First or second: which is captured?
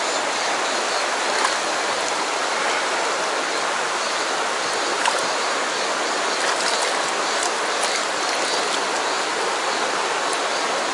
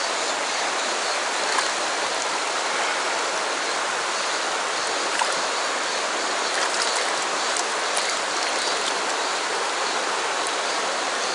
first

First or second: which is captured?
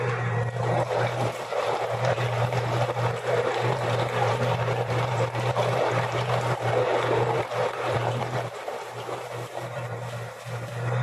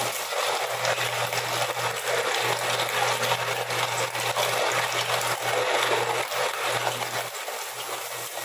second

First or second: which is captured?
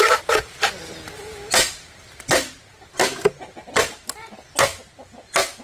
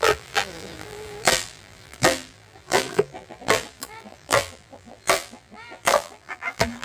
first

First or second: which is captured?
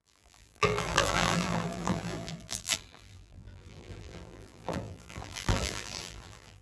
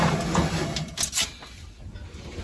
second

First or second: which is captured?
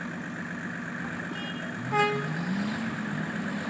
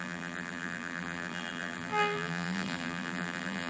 first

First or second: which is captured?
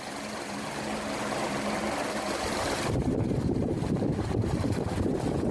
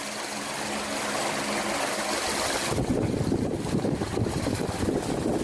second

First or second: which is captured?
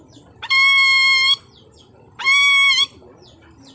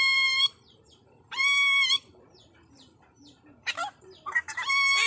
first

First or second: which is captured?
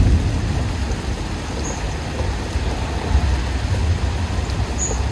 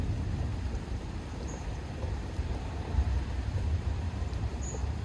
first